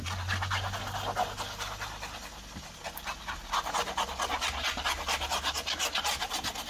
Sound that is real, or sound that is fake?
real